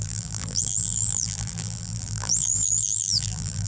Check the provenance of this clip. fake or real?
fake